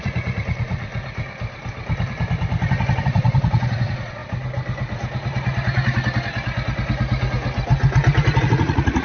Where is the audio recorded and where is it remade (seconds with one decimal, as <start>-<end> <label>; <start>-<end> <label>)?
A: 0.0-0.9 remade; 0.9-3.0 recorded; 3.0-4.2 remade; 4.2-8.4 recorded; 8.4-9.0 remade